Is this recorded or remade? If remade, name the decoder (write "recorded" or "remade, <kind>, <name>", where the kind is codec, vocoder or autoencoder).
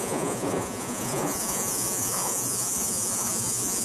remade, vocoder, Vocos